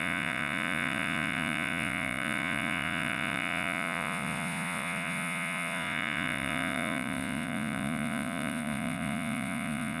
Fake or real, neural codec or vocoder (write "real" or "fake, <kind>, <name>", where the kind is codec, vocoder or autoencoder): fake, vocoder, Vocos